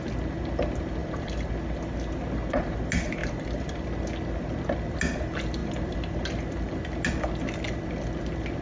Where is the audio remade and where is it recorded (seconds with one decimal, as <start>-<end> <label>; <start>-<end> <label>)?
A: 0.0-1.0 recorded; 1.0-1.5 remade; 1.5-3.2 recorded; 3.2-3.8 remade; 3.8-5.6 recorded; 5.6-6.8 remade; 6.8-8.6 recorded